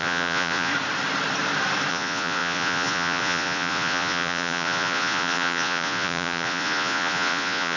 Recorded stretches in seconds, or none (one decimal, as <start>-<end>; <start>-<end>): 0.7-1.9

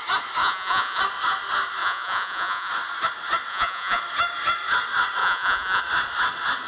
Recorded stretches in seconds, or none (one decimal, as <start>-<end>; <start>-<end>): 0.0-0.4; 1.0-1.8; 2.7-3.5; 4.0-5.2; 5.8-6.7

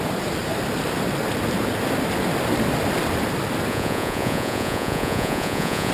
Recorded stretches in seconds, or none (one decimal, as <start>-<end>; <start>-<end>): 0.0-3.7

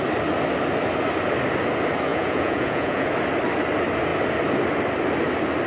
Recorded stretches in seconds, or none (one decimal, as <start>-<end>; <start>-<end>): 0.0-2.1; 3.1-5.7

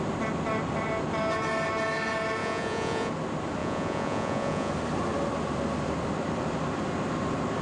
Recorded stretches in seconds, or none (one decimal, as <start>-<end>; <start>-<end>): 0.0-2.4; 3.1-3.6; 4.7-7.6

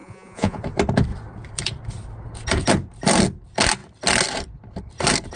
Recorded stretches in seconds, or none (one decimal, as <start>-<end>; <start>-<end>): 0.6-5.4

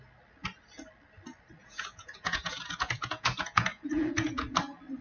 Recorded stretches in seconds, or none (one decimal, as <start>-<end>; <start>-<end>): 0.0-1.6; 4.6-5.0

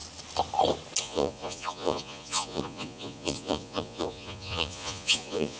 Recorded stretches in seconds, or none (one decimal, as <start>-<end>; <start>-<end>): 0.0-1.0